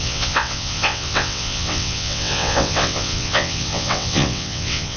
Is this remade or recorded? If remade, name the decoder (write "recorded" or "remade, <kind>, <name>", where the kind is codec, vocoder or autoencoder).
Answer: remade, vocoder, WaveNeXt